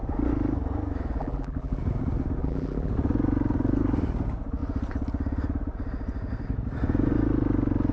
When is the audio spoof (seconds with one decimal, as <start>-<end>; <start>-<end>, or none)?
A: 1.2-1.8; 2.4-2.9